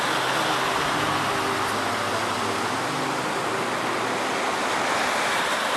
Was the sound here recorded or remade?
recorded